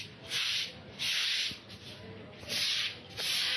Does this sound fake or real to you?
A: real